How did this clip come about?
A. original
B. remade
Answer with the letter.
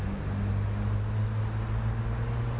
A